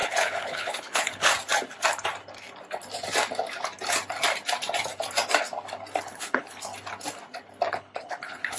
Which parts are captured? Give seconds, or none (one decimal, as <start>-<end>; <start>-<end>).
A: 1.3-6.0; 6.7-7.7